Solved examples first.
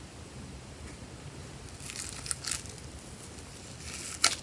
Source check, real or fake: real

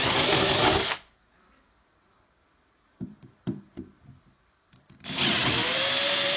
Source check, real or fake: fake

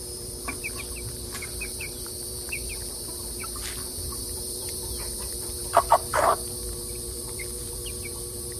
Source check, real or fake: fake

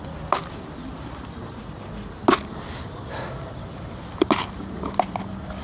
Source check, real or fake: real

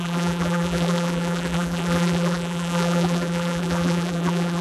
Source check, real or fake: fake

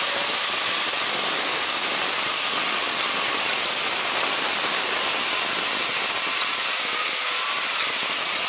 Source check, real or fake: fake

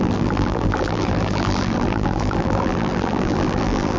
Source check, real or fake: fake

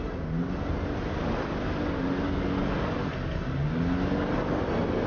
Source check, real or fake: real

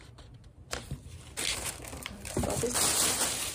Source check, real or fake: fake